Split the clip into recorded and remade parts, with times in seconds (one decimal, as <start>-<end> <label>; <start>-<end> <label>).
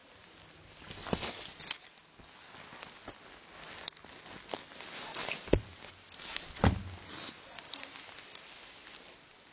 0.0-9.5 recorded